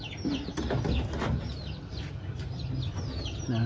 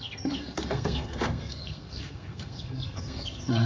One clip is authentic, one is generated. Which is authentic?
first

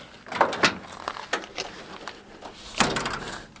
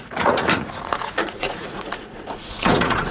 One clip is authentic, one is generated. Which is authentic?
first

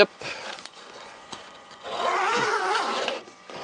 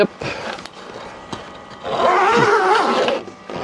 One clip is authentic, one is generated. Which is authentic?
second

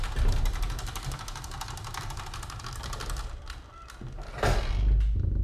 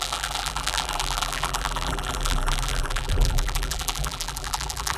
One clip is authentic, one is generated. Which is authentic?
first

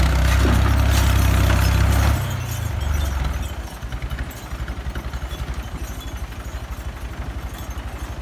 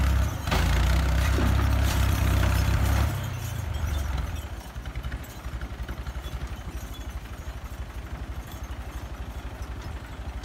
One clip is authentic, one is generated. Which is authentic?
first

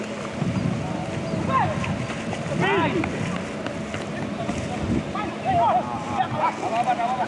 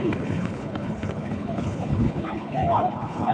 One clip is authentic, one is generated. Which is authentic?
first